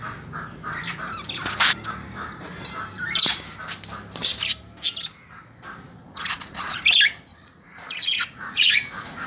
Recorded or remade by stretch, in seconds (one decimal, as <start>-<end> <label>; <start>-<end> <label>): 0.0-6.0 recorded; 6.0-6.8 remade; 6.8-7.3 recorded; 7.3-9.3 remade

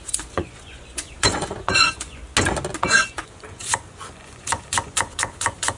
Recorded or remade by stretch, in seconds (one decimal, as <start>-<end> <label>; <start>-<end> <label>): 0.0-2.2 remade; 2.2-2.8 recorded; 2.8-5.8 remade

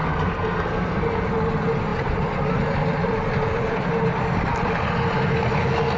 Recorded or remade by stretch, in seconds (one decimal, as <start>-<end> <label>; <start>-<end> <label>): 0.0-1.0 remade; 1.0-6.0 recorded